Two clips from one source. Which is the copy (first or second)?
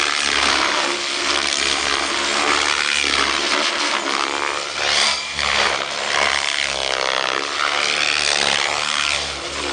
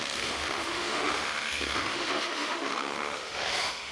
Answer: second